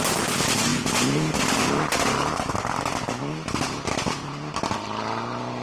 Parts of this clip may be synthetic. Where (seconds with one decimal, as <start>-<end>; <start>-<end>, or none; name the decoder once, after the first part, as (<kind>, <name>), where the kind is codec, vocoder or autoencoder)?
none